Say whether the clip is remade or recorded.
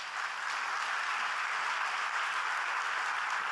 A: recorded